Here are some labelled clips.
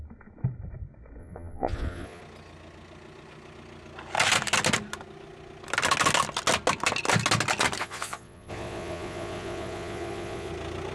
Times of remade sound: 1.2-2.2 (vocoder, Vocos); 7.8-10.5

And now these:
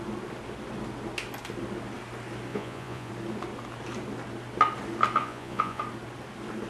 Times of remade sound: 2.5-3.1 (vocoder, Vocos); 5.2-5.8

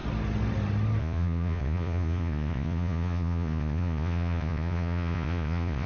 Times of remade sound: 1.0-5.9 (vocoder, Vocos)

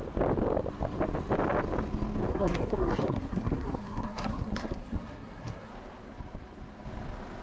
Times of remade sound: 2.3-5.7 (codec, SNAC)

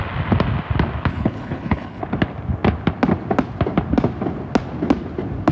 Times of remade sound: 1.1-2.0 (codec, HILCodec)

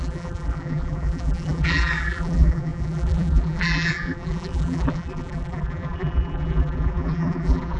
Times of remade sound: 0.0-7.8 (vocoder, BigVGAN v2)